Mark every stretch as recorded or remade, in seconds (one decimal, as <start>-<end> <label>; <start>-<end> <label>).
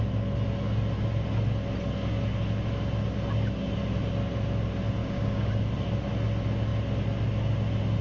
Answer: 0.0-5.0 recorded; 5.0-5.5 remade; 5.5-8.0 recorded